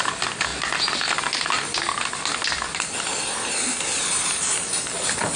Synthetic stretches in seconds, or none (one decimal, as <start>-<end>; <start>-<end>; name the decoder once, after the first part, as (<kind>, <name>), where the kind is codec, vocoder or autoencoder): none